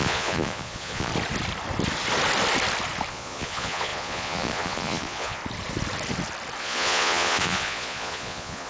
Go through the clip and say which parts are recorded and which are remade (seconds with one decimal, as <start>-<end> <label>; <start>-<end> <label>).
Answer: 0.0-1.1 remade; 1.1-3.1 recorded; 3.1-5.4 remade; 5.4-6.6 recorded; 6.6-8.7 remade